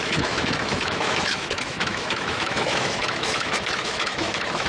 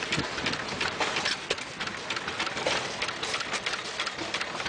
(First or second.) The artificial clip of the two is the first